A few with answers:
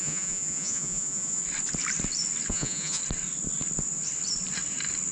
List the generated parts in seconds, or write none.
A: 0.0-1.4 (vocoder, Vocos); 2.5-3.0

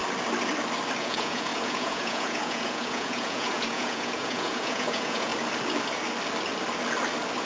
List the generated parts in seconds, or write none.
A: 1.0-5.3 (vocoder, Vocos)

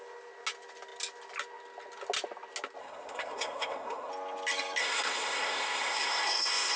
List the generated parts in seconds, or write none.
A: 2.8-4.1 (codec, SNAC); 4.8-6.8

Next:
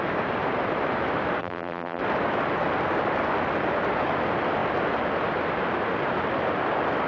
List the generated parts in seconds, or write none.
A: 1.4-2.0 (vocoder, BigVGAN v2)

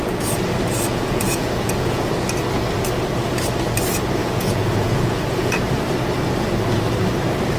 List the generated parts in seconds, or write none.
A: 0.9-2.1 (vocoder, Vocos); 4.2-5.7

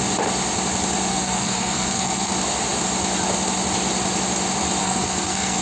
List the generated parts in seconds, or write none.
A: 1.1-2.3 (codec, SNAC); 4.8-5.6

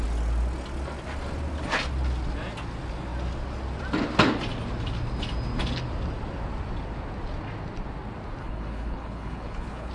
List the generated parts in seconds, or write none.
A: 8.4-9.9 (codec, HILCodec)